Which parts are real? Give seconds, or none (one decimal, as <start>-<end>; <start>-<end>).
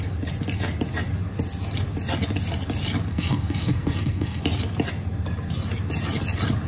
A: 0.0-3.1; 4.4-6.7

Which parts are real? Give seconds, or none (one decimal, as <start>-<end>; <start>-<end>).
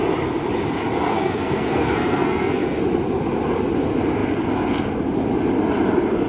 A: 0.0-1.1; 2.8-6.3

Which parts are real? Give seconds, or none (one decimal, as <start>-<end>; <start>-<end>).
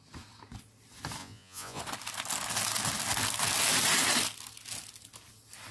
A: 0.0-1.2; 1.8-5.7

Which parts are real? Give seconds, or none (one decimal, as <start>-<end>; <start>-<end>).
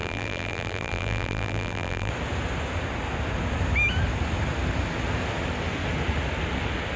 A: 2.1-7.0